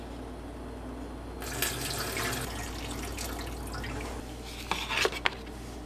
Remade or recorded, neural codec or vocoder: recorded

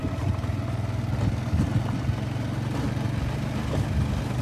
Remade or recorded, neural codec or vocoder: recorded